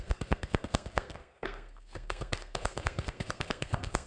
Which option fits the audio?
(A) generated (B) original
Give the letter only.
A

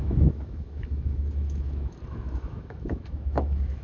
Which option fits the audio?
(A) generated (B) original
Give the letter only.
A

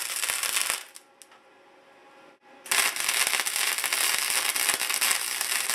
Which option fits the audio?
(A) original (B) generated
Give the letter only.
A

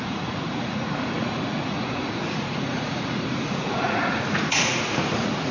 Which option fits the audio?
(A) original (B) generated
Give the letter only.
B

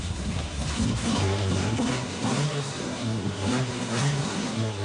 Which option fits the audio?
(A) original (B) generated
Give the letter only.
B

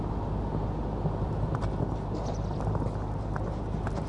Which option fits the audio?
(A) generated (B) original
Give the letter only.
B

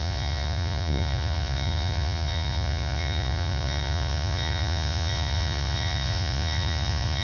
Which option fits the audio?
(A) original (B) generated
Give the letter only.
B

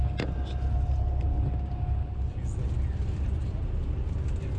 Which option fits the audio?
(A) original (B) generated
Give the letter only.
A